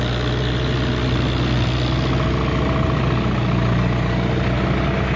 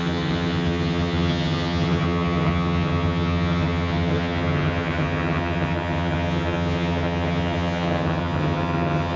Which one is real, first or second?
first